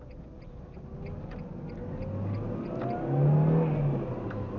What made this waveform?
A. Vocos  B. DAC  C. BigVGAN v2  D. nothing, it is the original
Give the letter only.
D